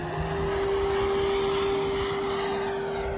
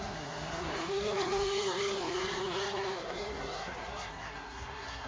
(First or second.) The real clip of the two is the first